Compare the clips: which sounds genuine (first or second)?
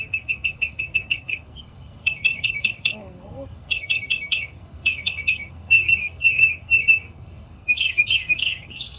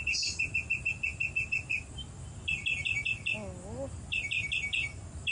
second